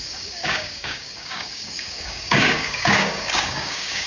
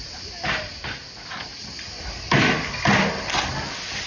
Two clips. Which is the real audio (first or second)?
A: second